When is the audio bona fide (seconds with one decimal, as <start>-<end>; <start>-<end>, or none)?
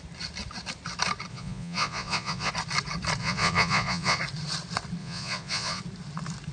0.0-1.3; 2.5-3.2; 4.2-5.0; 5.8-6.5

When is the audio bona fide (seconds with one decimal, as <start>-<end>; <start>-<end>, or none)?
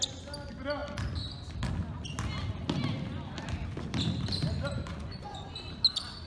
0.0-4.9; 5.5-6.3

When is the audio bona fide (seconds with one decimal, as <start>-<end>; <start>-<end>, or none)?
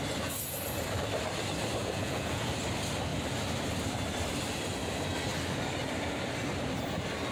0.0-1.8; 2.5-7.3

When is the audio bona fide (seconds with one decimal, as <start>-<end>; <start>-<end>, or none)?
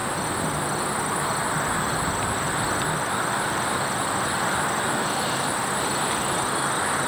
0.0-7.1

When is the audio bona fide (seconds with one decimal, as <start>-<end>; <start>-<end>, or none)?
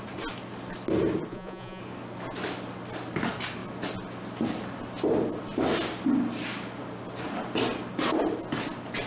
0.0-1.3; 1.8-9.1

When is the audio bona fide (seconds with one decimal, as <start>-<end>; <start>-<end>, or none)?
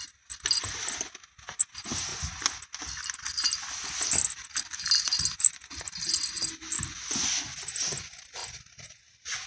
0.0-9.5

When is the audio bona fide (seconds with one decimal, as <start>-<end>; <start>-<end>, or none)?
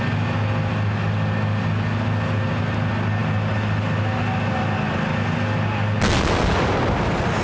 0.0-7.4